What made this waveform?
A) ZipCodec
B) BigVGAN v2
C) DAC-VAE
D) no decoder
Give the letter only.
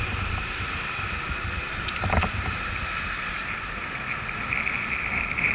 D